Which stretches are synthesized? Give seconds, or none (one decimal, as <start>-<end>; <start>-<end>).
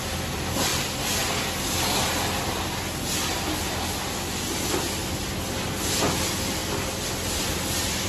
none